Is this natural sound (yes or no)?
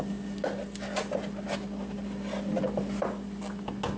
yes